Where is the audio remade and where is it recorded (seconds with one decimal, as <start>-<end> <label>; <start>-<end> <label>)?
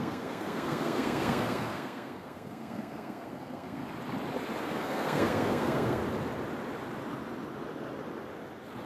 0.0-3.8 remade; 3.8-4.6 recorded; 4.6-6.0 remade; 6.0-8.9 recorded